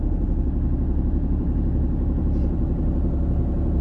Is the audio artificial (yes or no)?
yes